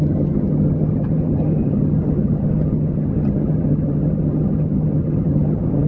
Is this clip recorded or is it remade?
remade